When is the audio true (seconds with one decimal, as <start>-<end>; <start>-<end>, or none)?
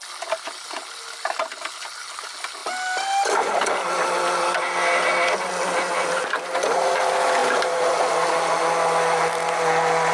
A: 0.0-7.4; 7.9-10.1